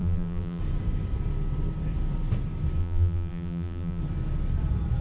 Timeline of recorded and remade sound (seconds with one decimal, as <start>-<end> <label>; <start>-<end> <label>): 0.0-0.6 remade; 0.6-2.8 recorded; 2.8-4.0 remade; 4.0-5.0 recorded